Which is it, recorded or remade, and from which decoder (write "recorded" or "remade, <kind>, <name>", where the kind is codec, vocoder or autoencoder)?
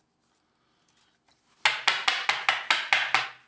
recorded